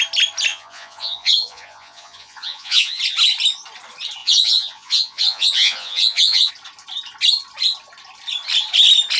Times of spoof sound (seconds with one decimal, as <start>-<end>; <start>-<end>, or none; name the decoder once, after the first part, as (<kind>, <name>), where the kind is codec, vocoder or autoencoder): 0.5-3.0 (vocoder, Vocos); 4.2-6.5